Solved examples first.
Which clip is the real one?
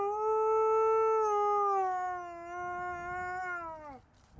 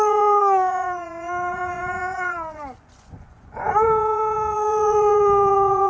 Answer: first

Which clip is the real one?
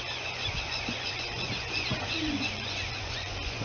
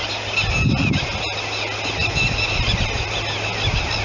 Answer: second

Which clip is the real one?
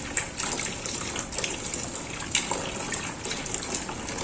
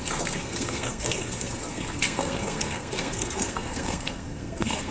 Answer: first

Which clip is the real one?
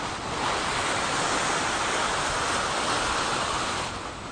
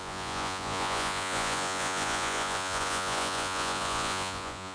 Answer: first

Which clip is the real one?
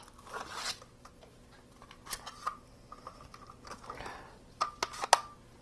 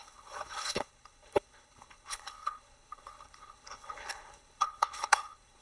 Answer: first